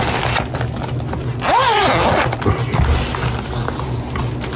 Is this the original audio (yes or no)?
yes